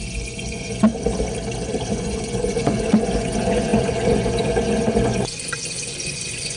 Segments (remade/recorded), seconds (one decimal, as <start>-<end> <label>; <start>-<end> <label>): 0.0-0.9 remade; 0.9-1.9 recorded; 1.9-6.6 remade